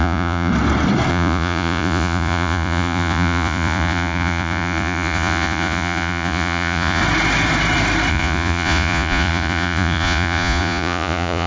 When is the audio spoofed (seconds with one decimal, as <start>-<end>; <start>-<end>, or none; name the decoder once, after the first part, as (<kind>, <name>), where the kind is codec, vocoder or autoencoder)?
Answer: 0.0-0.5 (vocoder, Vocos); 1.1-7.0; 8.1-11.5

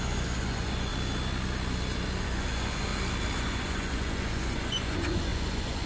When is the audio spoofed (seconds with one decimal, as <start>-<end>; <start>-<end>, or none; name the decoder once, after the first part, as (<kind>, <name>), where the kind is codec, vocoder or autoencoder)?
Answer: 0.0-0.9 (vocoder, Vocos); 2.2-2.9; 3.4-5.9

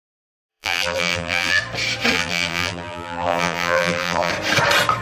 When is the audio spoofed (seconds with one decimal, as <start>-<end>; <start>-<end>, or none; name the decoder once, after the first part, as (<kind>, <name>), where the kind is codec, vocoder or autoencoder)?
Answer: 0.5-1.6 (vocoder, BigVGAN v2); 2.1-4.3

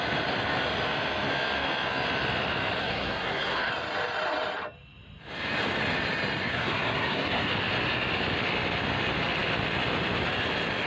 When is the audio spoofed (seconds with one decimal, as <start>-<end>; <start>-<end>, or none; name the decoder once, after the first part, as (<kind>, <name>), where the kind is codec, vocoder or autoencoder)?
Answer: 2.8-3.7 (codec, SNAC); 6.5-7.5